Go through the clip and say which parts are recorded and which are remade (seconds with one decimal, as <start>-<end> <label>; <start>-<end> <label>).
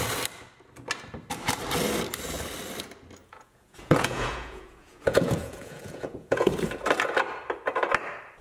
0.0-3.2 recorded; 3.2-6.5 remade; 6.5-8.4 recorded